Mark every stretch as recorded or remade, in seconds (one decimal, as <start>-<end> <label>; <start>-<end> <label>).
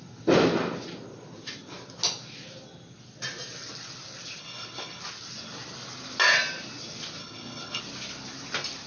0.0-4.4 recorded; 4.4-5.0 remade; 5.0-7.2 recorded; 7.2-7.8 remade; 7.8-8.9 recorded